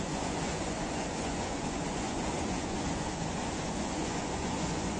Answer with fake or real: fake